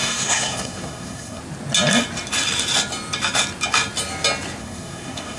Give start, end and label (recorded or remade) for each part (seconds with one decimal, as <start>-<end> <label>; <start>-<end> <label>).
0.0-1.4 remade; 1.4-4.6 recorded; 4.6-5.4 remade